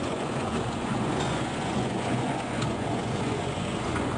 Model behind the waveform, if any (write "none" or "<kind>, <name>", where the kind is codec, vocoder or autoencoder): vocoder, Vocos